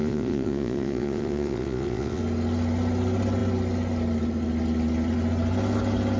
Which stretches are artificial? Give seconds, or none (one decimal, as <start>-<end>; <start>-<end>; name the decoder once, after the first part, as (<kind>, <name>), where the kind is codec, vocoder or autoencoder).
0.0-2.2 (vocoder, Vocos)